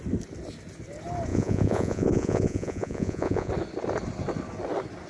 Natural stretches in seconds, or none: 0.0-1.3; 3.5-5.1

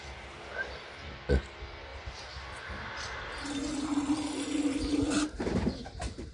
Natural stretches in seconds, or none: 0.0-6.3

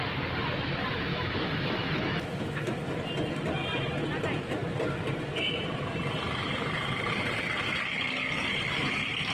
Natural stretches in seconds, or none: 0.0-1.1; 2.8-9.3

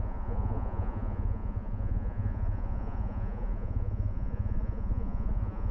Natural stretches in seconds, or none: none

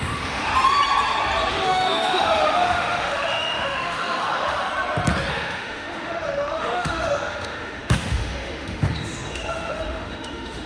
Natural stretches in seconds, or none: 0.5-1.5; 4.7-5.3

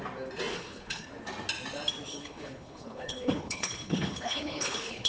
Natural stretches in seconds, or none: 0.0-0.5; 1.1-2.1

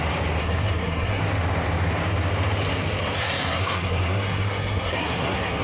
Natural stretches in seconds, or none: 0.0-0.4; 1.2-3.2